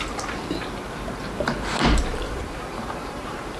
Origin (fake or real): fake